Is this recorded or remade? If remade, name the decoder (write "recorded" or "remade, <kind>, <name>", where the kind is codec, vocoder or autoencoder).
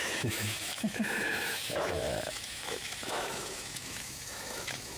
remade, autoencoder, DAC-VAE